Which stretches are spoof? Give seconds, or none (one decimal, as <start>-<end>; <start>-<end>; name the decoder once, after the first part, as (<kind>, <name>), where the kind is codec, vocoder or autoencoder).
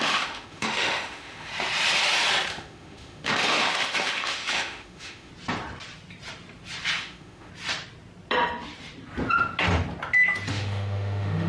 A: 0.0-1.5 (autoencoder, DAC-VAE); 2.5-5.3; 7.0-7.5; 10.5-11.5